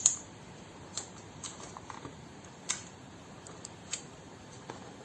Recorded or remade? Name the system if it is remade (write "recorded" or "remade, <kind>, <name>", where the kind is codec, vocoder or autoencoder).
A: remade, vocoder, BigVGAN v2